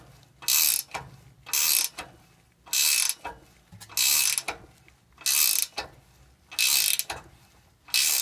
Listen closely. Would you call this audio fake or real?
real